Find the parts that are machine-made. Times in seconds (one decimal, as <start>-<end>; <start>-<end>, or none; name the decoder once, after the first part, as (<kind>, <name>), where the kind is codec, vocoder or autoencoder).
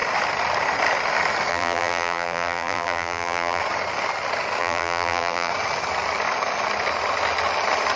1.5-3.6 (vocoder, BigVGAN v2); 4.6-5.5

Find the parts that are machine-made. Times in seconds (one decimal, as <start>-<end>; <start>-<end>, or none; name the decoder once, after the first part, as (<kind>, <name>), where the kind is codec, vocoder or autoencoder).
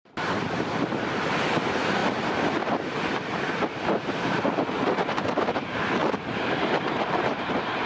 0.0-2.0 (vocoder, BigVGAN v2); 4.0-6.0; 7.1-7.9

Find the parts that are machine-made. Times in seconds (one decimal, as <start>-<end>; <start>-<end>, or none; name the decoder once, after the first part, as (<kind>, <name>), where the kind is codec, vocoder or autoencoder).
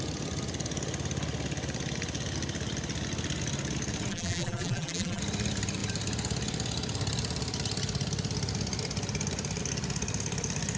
4.1-5.2 (vocoder, BigVGAN v2)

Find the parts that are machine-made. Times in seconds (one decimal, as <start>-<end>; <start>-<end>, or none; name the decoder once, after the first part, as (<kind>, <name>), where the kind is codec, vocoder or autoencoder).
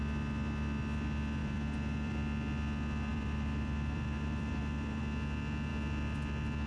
1.4-2.1 (vocoder, BigVGAN v2); 3.1-5.0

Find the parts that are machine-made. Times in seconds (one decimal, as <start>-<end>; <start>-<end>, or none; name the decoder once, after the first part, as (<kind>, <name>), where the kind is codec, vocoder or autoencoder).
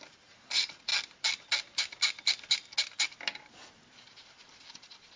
0.0-0.9 (vocoder, BigVGAN v2); 4.0-5.2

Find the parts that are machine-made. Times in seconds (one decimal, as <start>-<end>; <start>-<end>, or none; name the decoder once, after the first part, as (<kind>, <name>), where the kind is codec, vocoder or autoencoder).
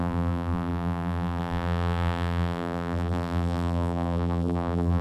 0.0-5.0 (vocoder, BigVGAN v2)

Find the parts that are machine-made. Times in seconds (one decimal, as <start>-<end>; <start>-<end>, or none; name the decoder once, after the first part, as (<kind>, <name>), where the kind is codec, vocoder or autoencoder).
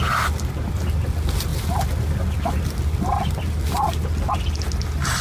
none